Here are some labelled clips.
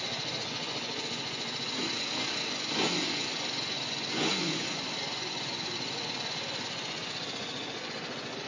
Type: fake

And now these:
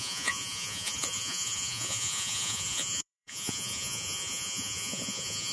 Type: fake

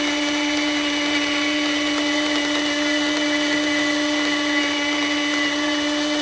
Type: real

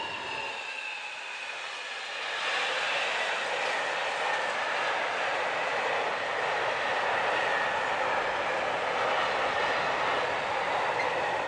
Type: real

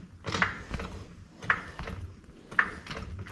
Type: real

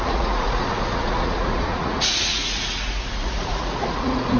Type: fake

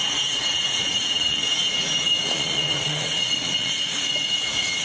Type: fake